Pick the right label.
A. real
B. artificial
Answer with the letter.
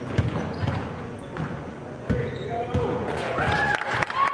B